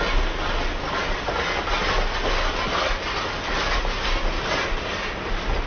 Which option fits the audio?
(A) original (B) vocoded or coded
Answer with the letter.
A